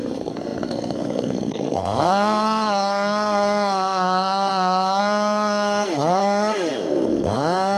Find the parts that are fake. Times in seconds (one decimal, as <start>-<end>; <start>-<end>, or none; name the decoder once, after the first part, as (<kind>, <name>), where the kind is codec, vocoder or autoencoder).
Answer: 0.0-7.8 (codec, SNAC)